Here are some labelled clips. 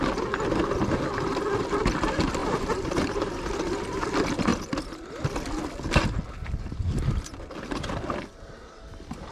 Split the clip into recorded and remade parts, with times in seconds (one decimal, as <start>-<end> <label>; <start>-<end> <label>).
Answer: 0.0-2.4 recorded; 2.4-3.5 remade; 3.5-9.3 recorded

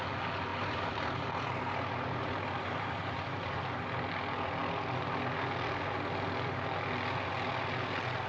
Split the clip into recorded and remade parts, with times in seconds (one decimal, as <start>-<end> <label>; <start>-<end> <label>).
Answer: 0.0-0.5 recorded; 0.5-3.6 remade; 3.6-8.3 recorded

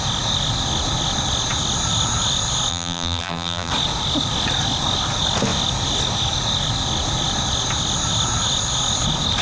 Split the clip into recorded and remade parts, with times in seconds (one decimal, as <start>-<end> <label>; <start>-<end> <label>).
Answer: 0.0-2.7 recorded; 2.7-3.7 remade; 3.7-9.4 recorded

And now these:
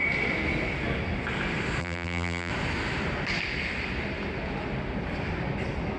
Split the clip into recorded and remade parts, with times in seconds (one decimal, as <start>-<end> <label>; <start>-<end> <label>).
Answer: 0.0-1.8 recorded; 1.8-2.5 remade; 2.5-6.0 recorded

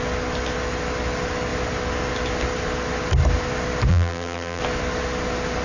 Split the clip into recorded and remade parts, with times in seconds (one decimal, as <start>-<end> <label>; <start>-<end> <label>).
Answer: 0.0-3.9 recorded; 3.9-4.6 remade; 4.6-5.6 recorded

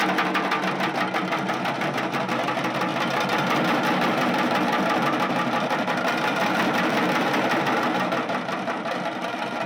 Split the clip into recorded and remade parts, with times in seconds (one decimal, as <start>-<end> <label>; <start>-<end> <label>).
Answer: 0.0-2.9 recorded; 2.9-7.6 remade; 7.6-9.7 recorded

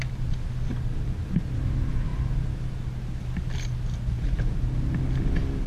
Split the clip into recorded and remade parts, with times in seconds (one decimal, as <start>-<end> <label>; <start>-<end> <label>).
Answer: 0.0-5.7 recorded

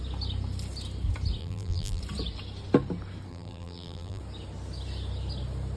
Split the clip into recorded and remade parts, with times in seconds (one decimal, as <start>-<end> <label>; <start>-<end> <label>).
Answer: 0.0-1.4 recorded; 1.4-2.0 remade; 2.0-3.3 recorded; 3.3-4.2 remade; 4.2-5.8 recorded